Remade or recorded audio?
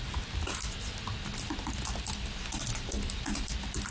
recorded